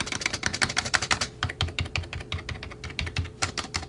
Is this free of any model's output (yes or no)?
no